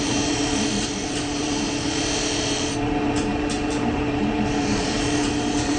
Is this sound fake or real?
fake